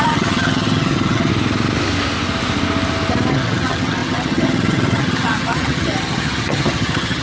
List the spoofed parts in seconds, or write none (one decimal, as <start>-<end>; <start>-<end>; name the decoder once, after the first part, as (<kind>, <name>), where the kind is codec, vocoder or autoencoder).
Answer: 0.0-1.3 (vocoder, HiFi-GAN); 3.3-7.2